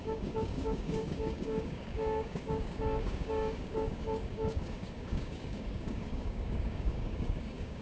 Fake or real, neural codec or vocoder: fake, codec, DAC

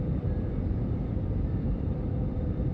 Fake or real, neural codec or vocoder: fake, vocoder, BigVGAN v2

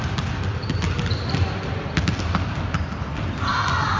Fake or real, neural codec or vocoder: real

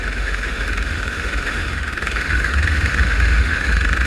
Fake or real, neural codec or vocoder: fake, autoencoder, DAC-VAE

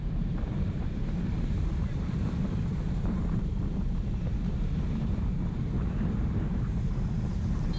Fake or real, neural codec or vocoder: fake, vocoder, BigVGAN v2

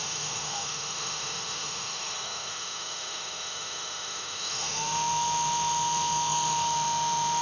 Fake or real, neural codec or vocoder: fake, autoencoder, DAC-VAE